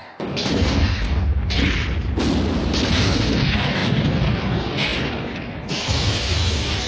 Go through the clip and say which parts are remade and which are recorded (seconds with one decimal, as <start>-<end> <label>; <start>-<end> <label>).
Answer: 0.0-1.6 remade; 1.6-2.9 recorded; 2.9-6.9 remade